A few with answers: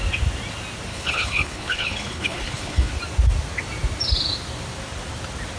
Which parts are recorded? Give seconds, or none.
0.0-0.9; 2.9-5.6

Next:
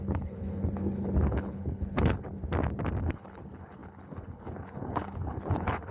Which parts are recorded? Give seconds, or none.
2.4-3.0

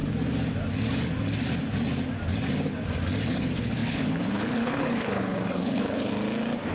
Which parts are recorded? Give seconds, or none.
0.0-3.3; 6.1-6.7

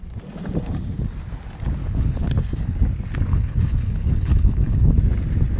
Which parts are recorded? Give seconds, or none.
0.0-1.8; 2.3-3.3; 5.0-5.6